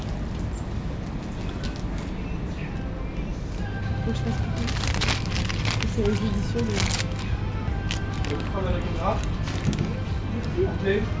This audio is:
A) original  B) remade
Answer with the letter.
A